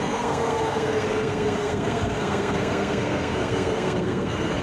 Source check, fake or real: fake